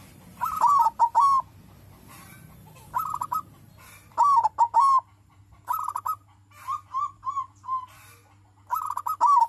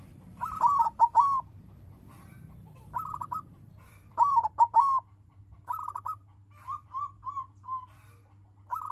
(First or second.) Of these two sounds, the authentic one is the first